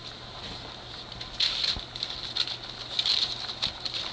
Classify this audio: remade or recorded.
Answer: recorded